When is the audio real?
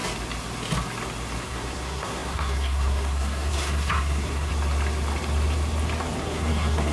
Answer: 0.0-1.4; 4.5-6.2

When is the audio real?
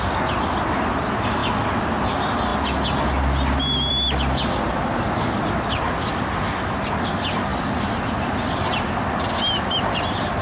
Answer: 0.0-10.4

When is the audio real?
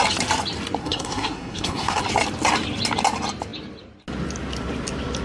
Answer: 0.0-0.8; 2.0-5.2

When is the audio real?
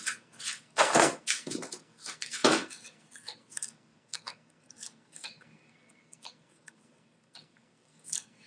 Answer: none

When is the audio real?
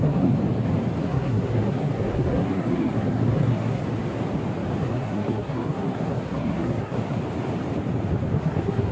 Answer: 0.4-1.0; 3.8-4.8; 7.2-8.4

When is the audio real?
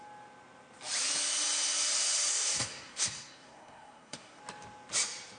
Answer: 0.0-2.3; 4.4-5.4